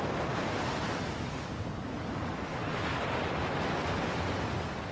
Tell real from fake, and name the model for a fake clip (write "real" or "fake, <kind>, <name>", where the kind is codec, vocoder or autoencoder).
real